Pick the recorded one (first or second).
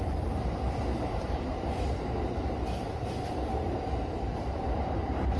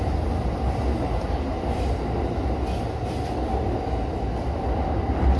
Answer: second